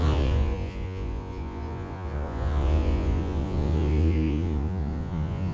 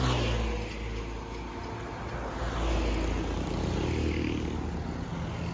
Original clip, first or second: second